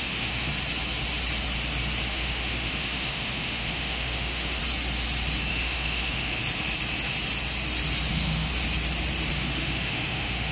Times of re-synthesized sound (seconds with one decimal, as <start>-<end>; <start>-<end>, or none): 0.0-0.5; 2.1-4.6; 5.5-6.4; 8.1-8.5; 9.3-10.5